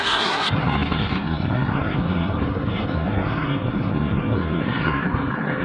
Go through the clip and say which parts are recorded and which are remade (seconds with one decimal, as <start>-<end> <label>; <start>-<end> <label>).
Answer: 0.0-5.6 remade